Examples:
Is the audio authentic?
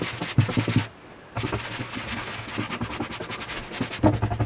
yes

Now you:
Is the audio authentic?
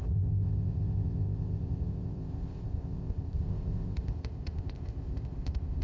no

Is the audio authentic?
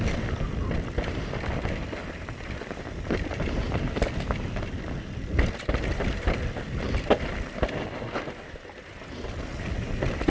yes